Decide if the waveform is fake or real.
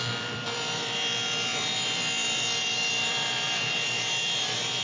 fake